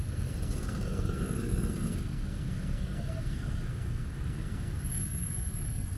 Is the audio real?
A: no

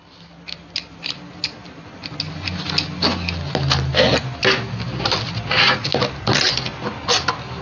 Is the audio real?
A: yes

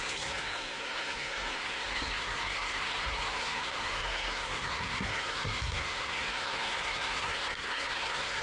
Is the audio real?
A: no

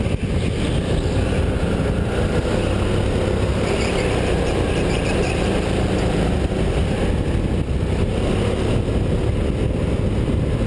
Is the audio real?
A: yes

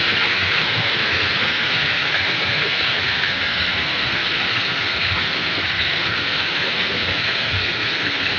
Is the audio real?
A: no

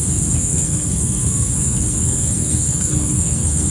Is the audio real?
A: no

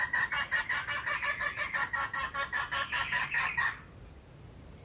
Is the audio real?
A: yes